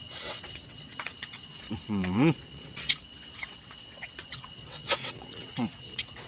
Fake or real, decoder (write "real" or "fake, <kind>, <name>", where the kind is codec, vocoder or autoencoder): fake, vocoder, WaveNeXt